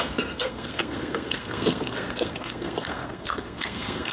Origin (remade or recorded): remade